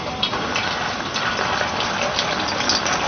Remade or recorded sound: recorded